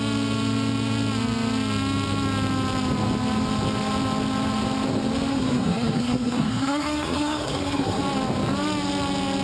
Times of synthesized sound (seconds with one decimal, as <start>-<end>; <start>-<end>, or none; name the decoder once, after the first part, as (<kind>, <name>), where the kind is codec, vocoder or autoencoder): 5.3-8.0 (codec, SNAC)